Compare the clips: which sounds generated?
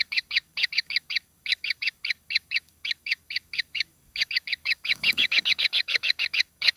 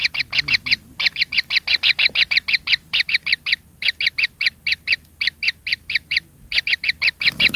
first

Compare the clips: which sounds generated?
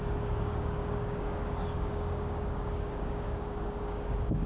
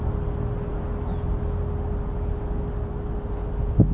first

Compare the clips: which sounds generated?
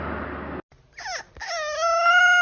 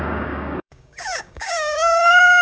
second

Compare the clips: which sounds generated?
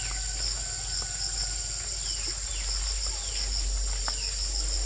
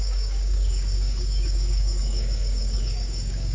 second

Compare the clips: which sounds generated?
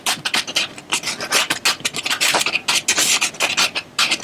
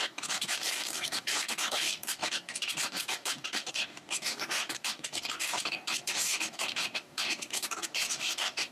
second